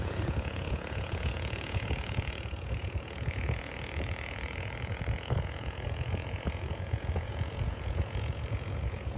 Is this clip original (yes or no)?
no